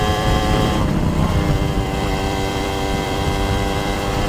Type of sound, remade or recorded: remade